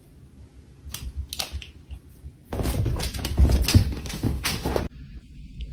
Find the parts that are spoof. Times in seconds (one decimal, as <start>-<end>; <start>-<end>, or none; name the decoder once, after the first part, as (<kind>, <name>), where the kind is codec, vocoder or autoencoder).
3.7-4.8 (autoencoder, DAC-VAE)